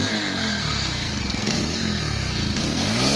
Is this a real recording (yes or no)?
no